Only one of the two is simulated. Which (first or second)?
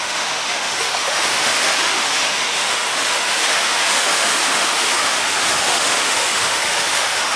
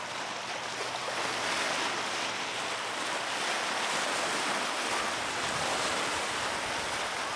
first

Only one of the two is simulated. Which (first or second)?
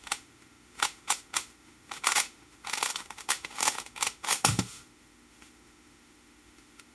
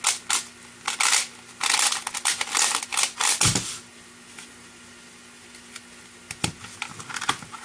first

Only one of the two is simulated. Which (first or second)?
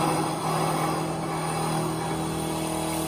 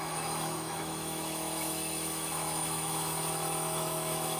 second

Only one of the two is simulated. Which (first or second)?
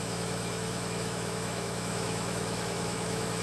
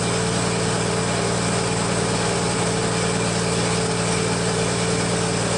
first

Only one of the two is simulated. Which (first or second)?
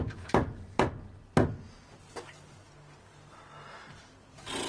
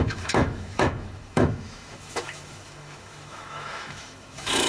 second